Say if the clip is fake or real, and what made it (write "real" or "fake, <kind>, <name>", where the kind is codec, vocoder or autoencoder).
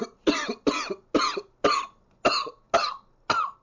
real